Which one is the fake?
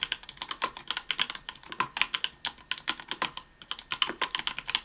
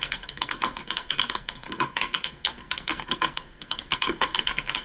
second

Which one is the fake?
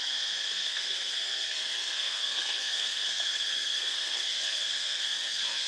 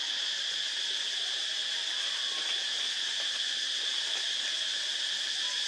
first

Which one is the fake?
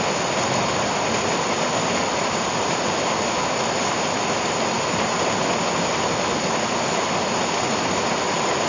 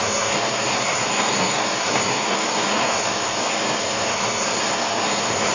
second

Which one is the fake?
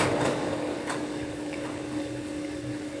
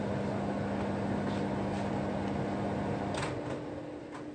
first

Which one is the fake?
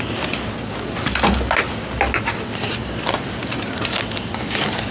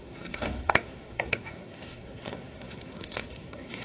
second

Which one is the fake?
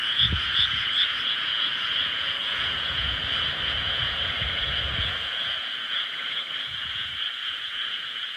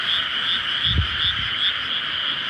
first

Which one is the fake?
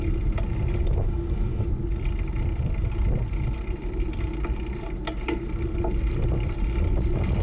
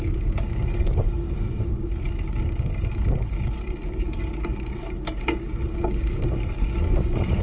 second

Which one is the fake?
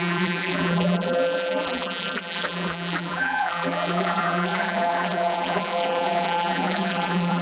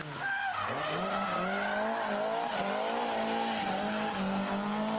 first